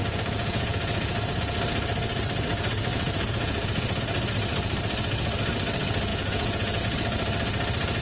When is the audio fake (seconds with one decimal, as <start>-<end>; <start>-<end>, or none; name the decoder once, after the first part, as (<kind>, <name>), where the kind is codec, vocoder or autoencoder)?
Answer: 0.0-1.4 (vocoder, Vocos); 2.9-4.0; 6.1-6.8